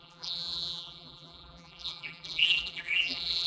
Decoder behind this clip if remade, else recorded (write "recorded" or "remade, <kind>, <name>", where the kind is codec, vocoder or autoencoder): remade, vocoder, BigVGAN v2